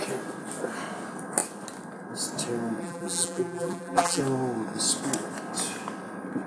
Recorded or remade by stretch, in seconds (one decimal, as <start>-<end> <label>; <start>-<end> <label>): 0.0-2.8 recorded; 2.8-4.2 remade; 4.2-6.5 recorded